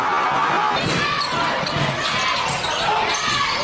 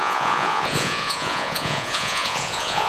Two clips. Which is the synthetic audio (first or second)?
second